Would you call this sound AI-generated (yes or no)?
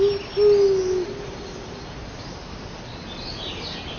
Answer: no